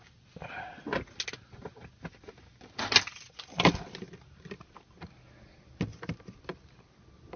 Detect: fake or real real